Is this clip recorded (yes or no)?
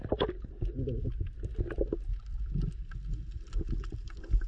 yes